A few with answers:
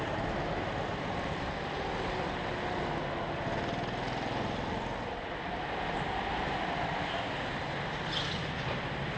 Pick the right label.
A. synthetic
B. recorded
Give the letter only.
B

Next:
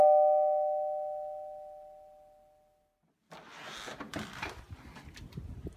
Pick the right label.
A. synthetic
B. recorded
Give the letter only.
B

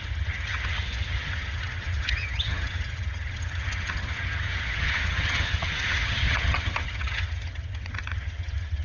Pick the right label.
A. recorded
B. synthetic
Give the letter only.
B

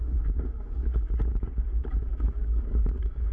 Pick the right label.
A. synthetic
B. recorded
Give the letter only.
A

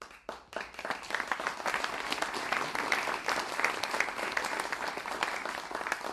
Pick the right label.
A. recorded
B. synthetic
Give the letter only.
A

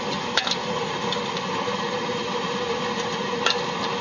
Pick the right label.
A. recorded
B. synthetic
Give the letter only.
A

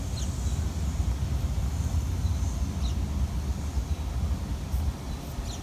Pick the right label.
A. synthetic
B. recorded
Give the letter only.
B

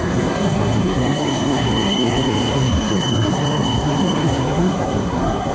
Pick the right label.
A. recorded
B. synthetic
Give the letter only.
B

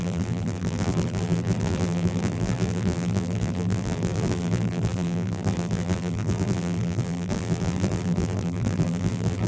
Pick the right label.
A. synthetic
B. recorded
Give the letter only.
A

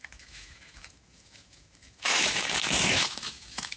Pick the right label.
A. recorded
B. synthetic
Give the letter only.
B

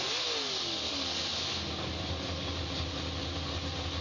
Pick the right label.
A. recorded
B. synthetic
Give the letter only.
A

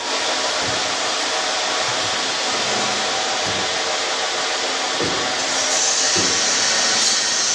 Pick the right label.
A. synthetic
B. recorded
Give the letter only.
B